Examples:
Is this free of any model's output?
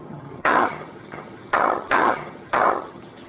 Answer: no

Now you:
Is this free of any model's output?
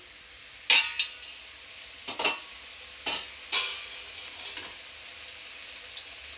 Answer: yes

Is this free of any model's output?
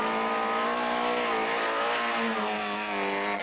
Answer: yes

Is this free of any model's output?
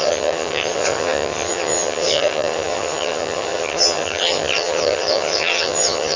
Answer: no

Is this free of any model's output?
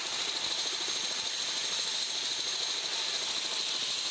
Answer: yes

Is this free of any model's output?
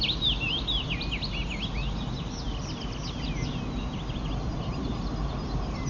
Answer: yes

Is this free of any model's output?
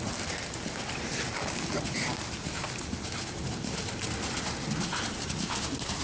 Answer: yes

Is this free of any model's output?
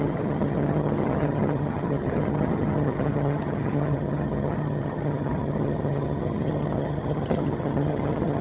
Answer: no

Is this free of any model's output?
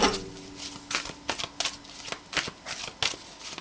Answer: yes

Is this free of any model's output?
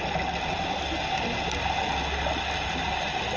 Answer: yes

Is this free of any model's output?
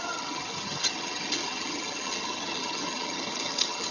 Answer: no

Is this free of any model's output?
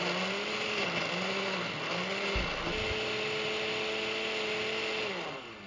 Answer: yes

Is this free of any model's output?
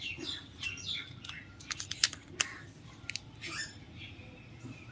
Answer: yes